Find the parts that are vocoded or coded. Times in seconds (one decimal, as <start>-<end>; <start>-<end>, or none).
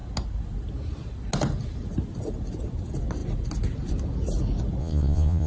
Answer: 4.8-5.5